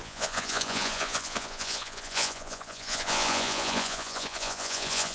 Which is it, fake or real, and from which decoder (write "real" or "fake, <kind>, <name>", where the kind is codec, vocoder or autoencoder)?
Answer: fake, vocoder, Vocos